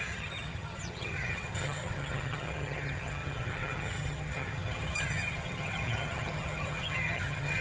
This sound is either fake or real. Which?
fake